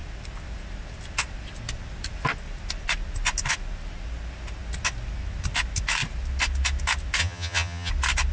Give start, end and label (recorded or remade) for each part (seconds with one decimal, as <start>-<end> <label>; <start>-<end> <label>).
0.0-7.2 recorded; 7.2-7.9 remade; 7.9-8.3 recorded